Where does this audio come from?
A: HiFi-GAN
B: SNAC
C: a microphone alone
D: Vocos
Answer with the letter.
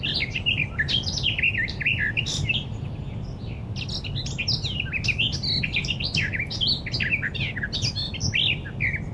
C